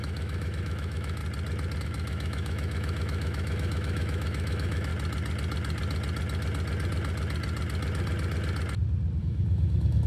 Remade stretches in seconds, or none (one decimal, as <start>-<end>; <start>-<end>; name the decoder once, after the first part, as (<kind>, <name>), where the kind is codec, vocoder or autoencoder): 0.0-1.2 (autoencoder, DAC-VAE); 1.8-4.9; 9.2-10.1